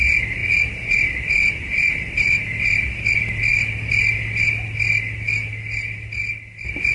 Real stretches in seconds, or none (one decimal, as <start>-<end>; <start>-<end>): 0.0-6.9